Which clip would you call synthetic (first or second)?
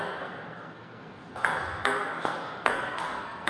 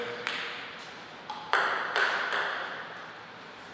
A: first